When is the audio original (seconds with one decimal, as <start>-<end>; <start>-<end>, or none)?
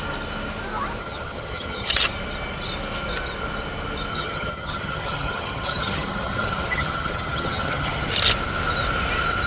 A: 0.0-1.0; 2.1-4.1; 8.1-9.5